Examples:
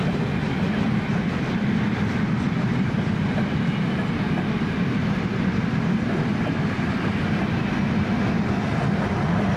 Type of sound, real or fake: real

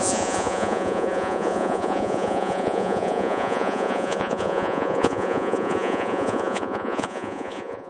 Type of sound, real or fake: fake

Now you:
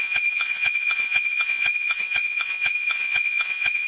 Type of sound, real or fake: fake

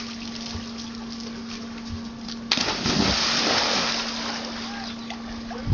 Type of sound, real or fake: real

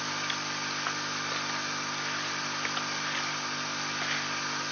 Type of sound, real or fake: real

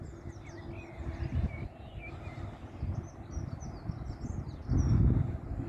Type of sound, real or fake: real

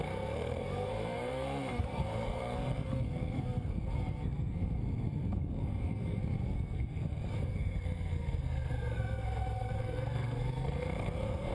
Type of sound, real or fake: fake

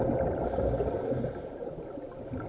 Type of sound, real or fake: real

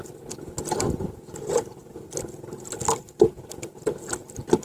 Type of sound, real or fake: real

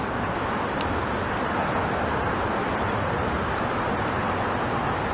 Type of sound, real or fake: real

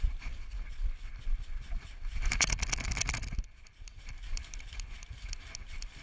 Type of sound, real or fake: real